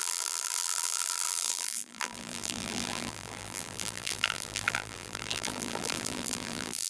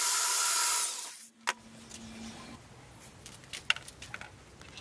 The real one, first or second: second